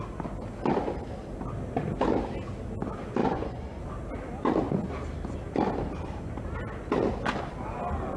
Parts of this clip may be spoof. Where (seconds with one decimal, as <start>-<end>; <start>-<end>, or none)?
3.2-3.8